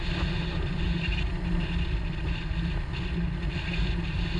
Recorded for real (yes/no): yes